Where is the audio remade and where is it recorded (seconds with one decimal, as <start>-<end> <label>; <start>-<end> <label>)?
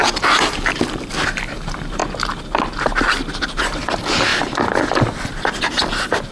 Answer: 0.0-2.0 remade; 2.0-3.3 recorded; 3.3-6.3 remade